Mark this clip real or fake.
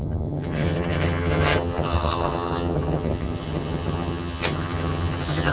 fake